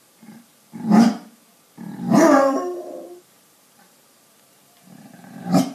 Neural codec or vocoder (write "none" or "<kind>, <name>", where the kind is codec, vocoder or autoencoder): vocoder, BigVGAN v2